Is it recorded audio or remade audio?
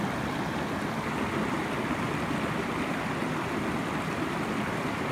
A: recorded